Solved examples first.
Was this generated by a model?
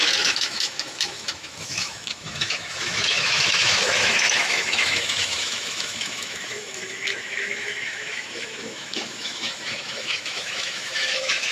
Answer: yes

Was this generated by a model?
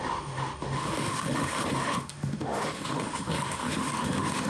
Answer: yes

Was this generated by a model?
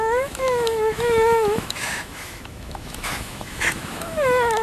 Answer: yes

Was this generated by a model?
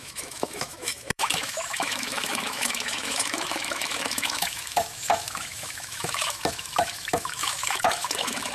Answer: yes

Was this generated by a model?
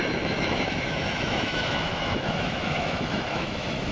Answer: yes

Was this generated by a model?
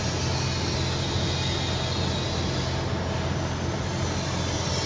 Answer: no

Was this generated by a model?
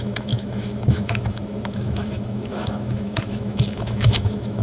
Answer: yes